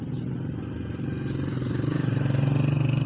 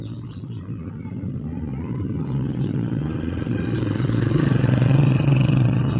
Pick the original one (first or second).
first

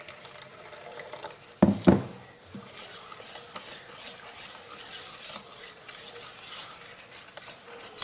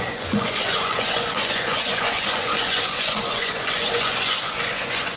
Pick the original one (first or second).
first